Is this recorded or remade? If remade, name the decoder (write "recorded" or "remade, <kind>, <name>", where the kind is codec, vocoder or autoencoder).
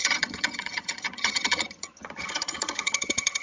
remade, vocoder, HiFi-GAN